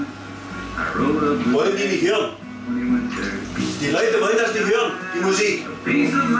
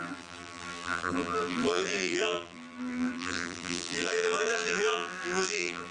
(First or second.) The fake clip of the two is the second